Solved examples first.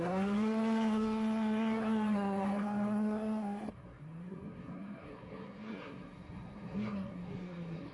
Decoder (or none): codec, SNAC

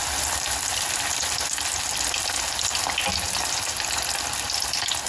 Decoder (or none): none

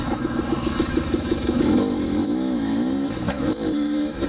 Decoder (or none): autoencoder, DAC-VAE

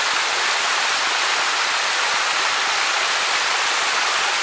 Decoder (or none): none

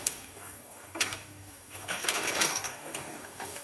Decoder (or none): codec, DAC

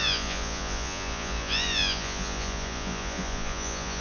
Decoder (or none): vocoder, Vocos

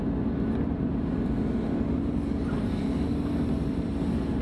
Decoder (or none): vocoder, BigVGAN v2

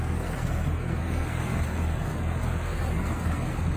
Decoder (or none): codec, SNAC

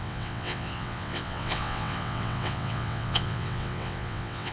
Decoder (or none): vocoder, WaveNeXt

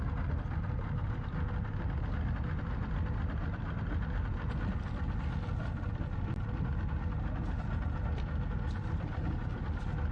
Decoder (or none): none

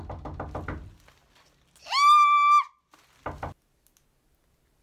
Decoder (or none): none